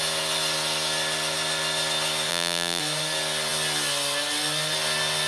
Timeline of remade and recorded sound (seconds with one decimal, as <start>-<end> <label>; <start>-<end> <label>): 0.0-2.3 recorded; 2.3-2.8 remade; 2.8-5.3 recorded